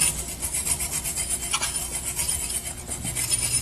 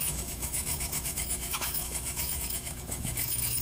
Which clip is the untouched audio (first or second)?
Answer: first